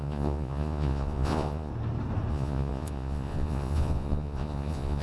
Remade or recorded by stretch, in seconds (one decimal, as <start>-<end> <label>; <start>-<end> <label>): 0.0-1.7 remade; 1.7-2.3 recorded; 2.3-5.0 remade